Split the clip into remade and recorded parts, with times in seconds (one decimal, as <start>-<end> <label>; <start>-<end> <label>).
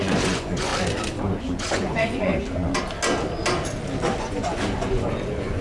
0.0-0.7 remade; 0.7-1.4 recorded; 1.4-2.3 remade; 2.3-4.2 recorded; 4.2-5.6 remade